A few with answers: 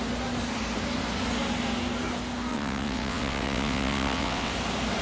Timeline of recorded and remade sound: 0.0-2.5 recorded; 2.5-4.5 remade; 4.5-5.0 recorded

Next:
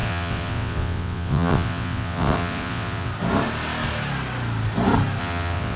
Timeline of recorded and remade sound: 0.0-3.1 remade; 3.1-5.2 recorded; 5.2-5.8 remade

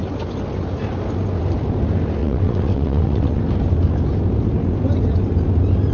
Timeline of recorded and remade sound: 0.0-2.2 recorded; 2.2-3.4 remade; 3.4-5.9 recorded

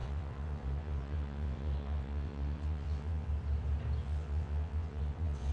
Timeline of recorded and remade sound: 0.0-3.3 remade; 3.3-4.0 recorded; 4.0-5.5 remade

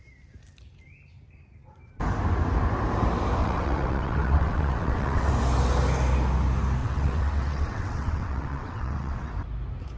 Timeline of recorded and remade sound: 0.0-3.4 recorded; 3.4-5.3 remade; 5.3-6.8 recorded; 6.8-9.3 remade; 9.3-10.0 recorded